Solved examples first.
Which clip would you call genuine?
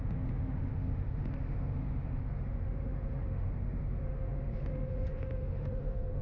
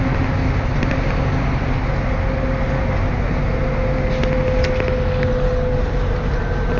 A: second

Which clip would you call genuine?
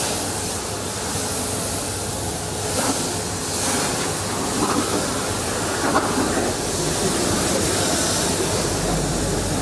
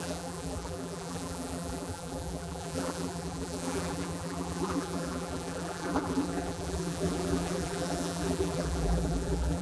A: first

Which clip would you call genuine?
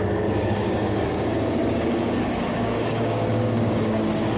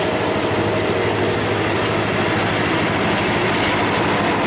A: second